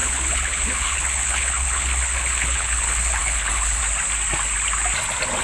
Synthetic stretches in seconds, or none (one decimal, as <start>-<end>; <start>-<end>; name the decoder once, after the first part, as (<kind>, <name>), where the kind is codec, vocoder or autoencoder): 0.0-3.8 (codec, HILCodec)